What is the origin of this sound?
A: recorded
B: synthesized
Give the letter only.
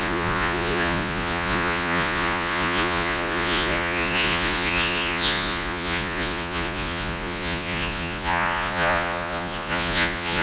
B